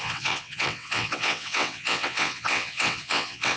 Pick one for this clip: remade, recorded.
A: remade